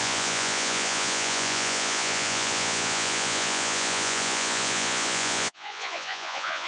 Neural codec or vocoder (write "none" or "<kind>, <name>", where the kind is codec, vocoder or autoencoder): vocoder, Vocos